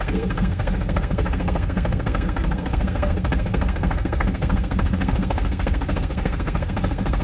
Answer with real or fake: fake